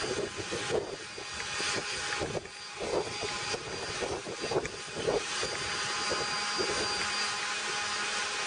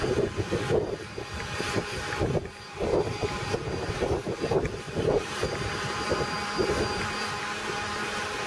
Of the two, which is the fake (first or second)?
second